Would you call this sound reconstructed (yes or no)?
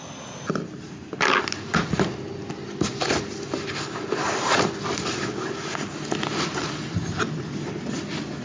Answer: no